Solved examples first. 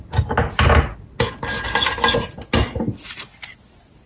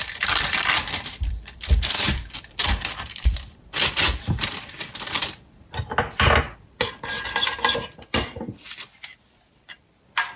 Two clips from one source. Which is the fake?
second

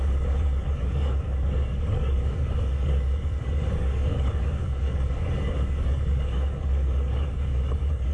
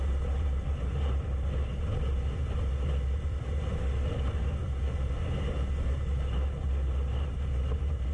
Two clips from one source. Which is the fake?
first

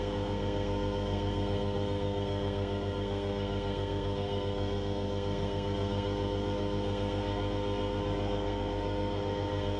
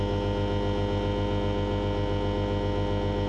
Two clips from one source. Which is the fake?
first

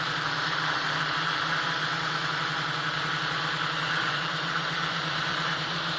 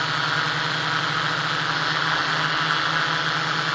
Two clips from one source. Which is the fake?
first